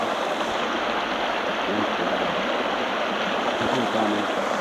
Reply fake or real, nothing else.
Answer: real